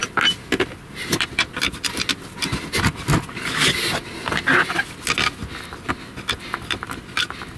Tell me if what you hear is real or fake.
real